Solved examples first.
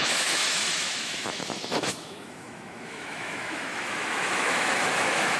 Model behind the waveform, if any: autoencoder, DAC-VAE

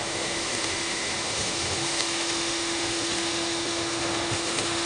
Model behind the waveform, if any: autoencoder, DAC-VAE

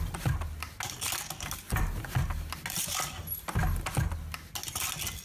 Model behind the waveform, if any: none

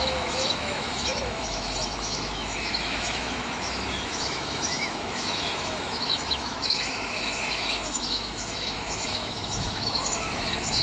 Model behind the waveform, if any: autoencoder, DAC-VAE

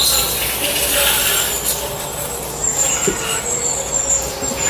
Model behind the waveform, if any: none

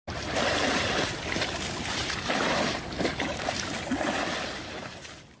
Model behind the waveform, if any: none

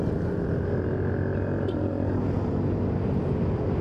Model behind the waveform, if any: none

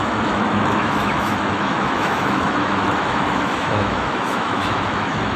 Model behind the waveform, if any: autoencoder, DAC-VAE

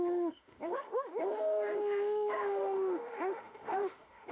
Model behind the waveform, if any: autoencoder, DAC-VAE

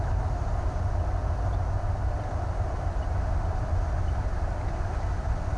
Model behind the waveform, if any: none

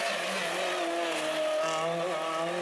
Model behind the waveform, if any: none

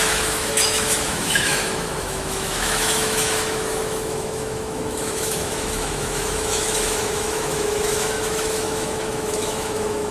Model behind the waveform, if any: autoencoder, DAC-VAE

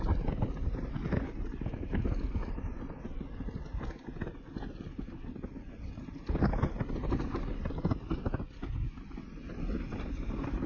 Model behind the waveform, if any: none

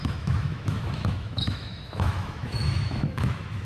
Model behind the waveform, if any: autoencoder, DAC-VAE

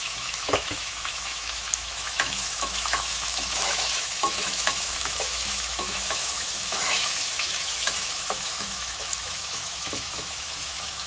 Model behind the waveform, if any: autoencoder, DAC-VAE